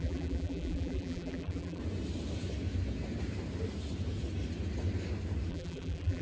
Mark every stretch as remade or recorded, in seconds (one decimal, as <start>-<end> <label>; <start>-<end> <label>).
0.0-1.8 remade; 1.8-5.5 recorded; 5.5-6.2 remade